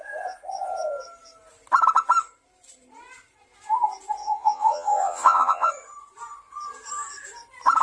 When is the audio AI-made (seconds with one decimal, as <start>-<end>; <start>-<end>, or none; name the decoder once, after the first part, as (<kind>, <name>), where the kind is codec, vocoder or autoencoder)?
4.2-5.7 (vocoder, Vocos)